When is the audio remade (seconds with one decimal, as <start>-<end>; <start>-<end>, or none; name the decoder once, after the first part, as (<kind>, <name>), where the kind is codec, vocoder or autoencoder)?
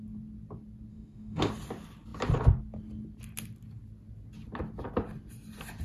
0.9-1.5 (autoencoder, DAC-VAE)